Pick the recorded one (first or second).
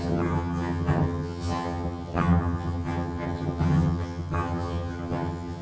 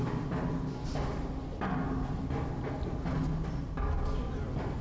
second